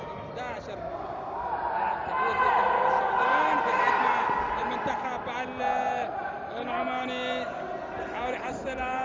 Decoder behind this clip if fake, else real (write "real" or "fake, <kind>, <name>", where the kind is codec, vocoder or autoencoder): real